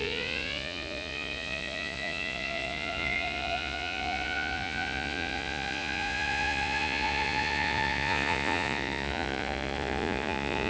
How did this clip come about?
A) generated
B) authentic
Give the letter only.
A